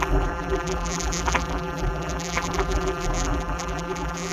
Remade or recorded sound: remade